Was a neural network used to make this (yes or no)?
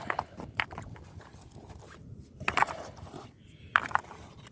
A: yes